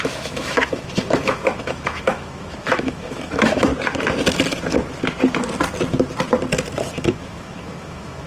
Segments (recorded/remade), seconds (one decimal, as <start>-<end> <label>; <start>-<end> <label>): 0.0-3.7 remade; 3.7-6.8 recorded; 6.8-8.3 remade